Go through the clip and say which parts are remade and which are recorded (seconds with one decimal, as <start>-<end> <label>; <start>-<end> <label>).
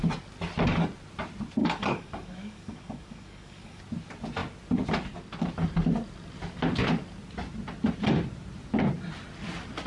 0.0-1.6 recorded; 1.6-3.8 remade; 3.8-9.9 recorded